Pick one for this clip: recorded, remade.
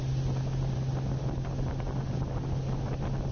recorded